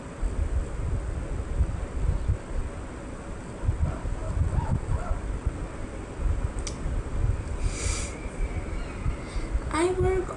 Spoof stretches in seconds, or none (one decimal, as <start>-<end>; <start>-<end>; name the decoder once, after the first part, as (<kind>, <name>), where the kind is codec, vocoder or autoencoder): none

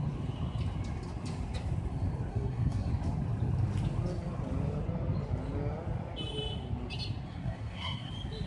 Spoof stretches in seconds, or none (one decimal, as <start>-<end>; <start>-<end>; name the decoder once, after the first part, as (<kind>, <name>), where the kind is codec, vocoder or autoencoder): 2.3-2.9 (codec, SNAC); 7.3-8.1

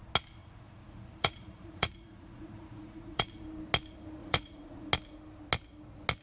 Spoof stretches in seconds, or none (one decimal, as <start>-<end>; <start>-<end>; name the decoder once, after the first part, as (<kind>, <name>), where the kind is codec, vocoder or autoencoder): 0.4-3.3 (vocoder, Vocos); 4.2-4.9

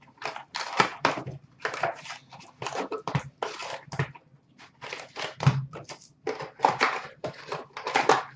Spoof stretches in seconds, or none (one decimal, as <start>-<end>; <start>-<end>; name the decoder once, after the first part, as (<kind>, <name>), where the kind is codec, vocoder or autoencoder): 0.0-7.6 (vocoder, BigVGAN v2)

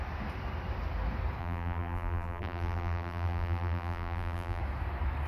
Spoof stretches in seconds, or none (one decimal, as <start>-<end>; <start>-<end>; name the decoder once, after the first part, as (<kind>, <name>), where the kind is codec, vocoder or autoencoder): 1.4-4.6 (vocoder, BigVGAN v2)

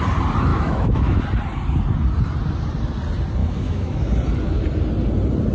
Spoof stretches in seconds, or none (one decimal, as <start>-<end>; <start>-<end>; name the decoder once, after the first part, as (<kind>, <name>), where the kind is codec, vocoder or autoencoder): 0.5-1.2 (autoencoder, DAC-VAE); 3.4-4.1